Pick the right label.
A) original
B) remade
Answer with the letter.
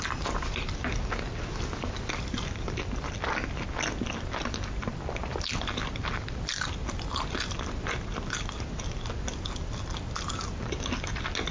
A